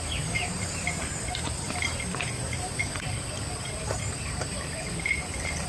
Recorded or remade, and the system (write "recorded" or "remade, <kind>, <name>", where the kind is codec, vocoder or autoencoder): remade, vocoder, BigVGAN v2